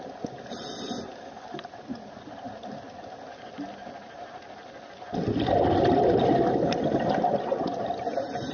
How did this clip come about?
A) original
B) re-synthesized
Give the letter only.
A